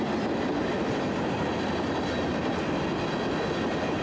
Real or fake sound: real